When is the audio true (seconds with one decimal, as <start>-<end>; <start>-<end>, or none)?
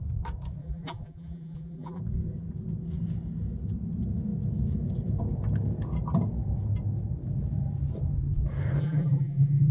0.0-0.6; 2.0-8.8